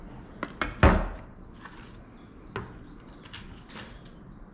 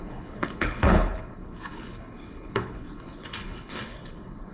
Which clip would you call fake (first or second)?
second